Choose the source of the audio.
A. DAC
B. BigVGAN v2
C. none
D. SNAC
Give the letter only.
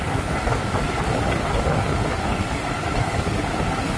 A